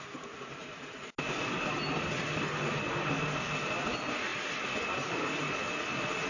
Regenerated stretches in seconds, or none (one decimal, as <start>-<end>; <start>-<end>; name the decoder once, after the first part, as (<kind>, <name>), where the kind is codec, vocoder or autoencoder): none